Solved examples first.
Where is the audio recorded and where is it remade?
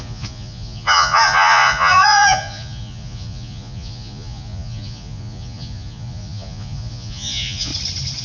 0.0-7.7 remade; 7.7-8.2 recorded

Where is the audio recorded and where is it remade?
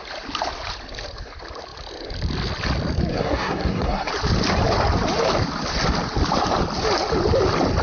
0.0-3.1 recorded; 3.1-4.1 remade; 4.1-7.8 recorded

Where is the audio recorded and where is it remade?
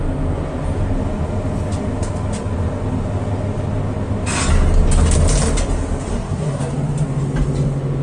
0.0-6.1 recorded; 6.1-6.6 remade; 6.6-8.0 recorded